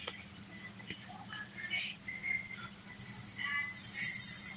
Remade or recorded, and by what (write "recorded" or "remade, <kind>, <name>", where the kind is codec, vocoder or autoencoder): recorded